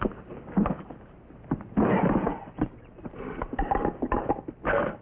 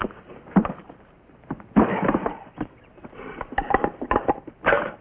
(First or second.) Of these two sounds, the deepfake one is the second